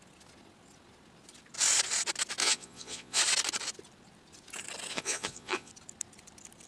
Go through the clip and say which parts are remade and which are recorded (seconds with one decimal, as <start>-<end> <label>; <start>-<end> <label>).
0.0-2.4 recorded; 2.4-3.2 remade; 3.2-4.9 recorded; 4.9-5.7 remade; 5.7-6.7 recorded